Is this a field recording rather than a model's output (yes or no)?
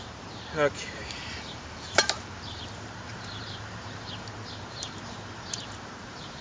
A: no